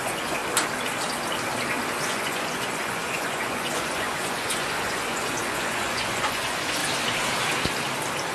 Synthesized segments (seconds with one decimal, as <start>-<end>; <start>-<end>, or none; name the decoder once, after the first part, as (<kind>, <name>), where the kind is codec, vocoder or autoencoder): 0.0-0.4 (vocoder, Vocos); 2.0-6.8